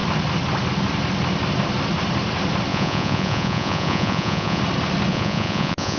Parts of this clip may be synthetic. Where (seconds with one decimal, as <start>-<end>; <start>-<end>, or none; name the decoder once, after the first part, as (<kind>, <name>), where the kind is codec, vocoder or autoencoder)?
2.7-4.6 (vocoder, Vocos); 5.1-6.0